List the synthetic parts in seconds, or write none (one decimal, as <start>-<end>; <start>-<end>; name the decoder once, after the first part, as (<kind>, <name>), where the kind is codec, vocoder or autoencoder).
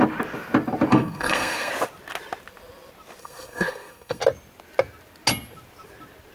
0.9-1.7 (codec, SNAC); 3.2-4.2